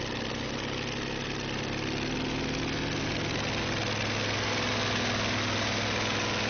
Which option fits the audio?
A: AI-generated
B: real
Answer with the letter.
B